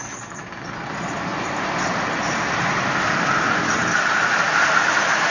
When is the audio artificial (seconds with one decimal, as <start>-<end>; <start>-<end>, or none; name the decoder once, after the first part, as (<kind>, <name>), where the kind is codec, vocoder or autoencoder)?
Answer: 1.3-2.2 (vocoder, BigVGAN v2); 3.8-5.3